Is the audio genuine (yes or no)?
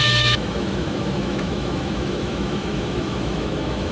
no